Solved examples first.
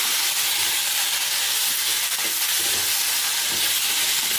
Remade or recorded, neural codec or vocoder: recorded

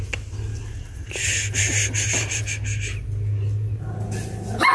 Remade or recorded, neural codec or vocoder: recorded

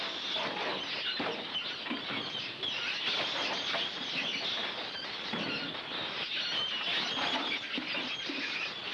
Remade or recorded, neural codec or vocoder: recorded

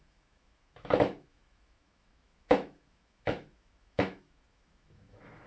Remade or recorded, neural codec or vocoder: remade, autoencoder, DAC-VAE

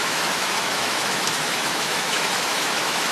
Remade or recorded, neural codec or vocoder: remade, autoencoder, DAC-VAE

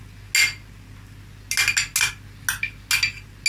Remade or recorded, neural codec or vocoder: recorded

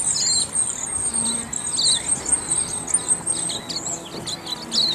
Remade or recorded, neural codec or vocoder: recorded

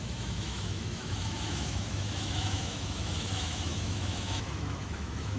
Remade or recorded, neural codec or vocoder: remade, autoencoder, DAC-VAE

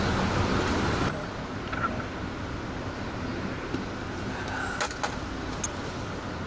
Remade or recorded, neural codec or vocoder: recorded